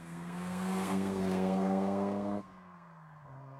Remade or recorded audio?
remade